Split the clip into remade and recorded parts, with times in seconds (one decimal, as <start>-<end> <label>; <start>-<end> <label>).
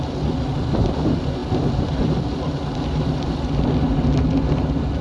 0.0-5.0 recorded